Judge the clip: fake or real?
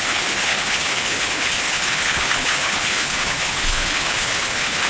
fake